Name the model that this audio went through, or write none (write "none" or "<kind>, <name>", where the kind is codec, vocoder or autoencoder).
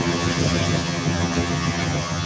vocoder, HiFi-GAN